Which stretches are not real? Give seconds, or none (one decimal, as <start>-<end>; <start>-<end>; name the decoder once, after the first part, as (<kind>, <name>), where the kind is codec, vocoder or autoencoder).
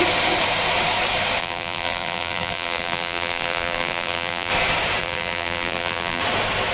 1.4-4.5 (vocoder, BigVGAN v2); 5.0-6.2